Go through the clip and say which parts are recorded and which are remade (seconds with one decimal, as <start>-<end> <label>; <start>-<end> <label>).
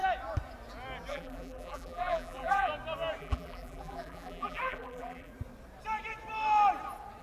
0.0-1.1 recorded; 1.1-2.7 remade; 2.7-3.2 recorded; 3.2-5.3 remade; 5.3-7.2 recorded